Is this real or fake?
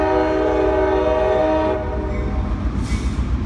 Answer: real